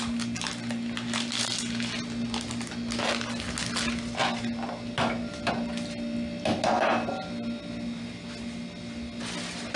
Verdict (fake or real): real